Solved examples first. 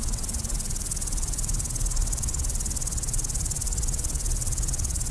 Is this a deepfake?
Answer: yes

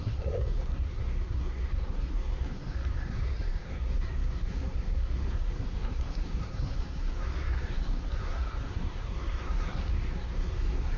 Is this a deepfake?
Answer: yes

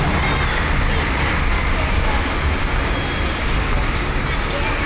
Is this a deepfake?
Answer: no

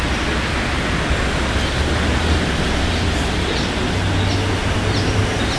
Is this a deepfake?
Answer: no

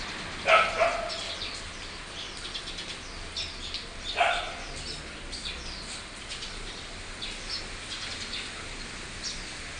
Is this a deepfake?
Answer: no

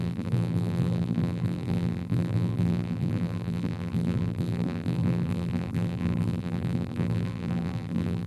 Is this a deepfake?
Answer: yes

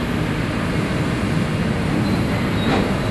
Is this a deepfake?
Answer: yes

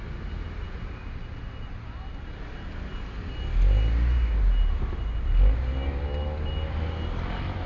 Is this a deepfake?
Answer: no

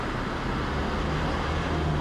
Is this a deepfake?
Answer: no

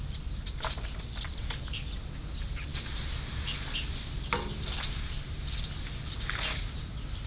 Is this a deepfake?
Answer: no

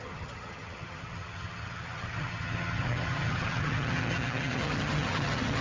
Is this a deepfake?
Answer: yes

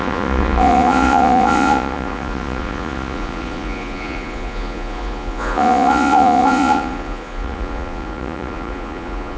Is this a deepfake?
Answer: yes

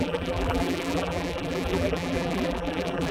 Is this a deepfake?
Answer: yes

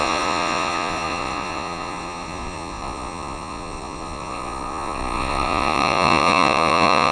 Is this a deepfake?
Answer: yes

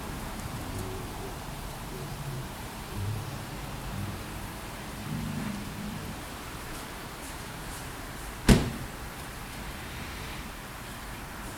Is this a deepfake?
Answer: yes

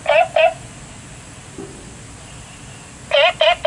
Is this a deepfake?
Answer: no